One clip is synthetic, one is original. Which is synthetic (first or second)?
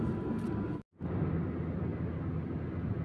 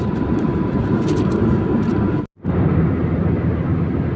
second